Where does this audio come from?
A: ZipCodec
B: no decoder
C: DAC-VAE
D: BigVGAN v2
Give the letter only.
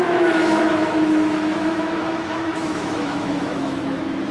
C